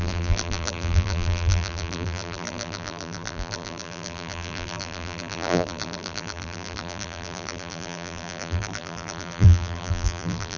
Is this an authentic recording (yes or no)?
no